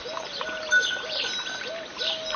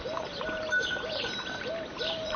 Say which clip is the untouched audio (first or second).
first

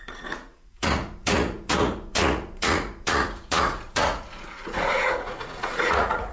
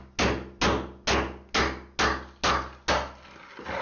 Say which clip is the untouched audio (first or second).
second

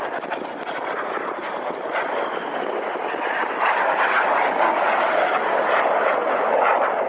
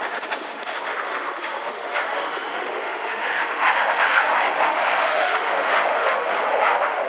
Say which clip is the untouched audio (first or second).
first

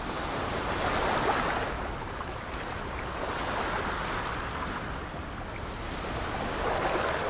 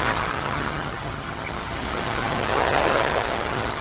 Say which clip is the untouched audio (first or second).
first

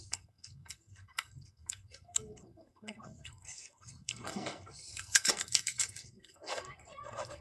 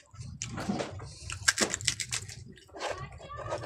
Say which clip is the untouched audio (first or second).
second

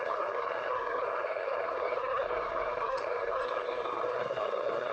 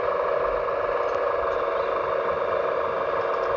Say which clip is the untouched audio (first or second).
second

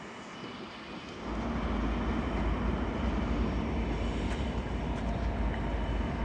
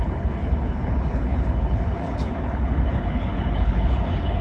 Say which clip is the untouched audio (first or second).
first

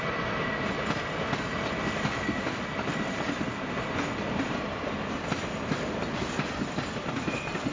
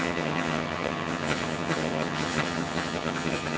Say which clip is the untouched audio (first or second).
first